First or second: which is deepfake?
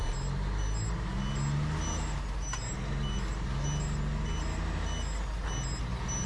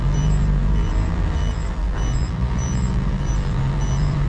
second